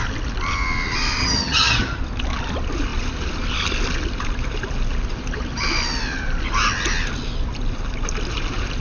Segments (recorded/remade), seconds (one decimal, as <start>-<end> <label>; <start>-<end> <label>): 0.0-1.2 recorded; 1.2-2.0 remade; 2.0-8.8 recorded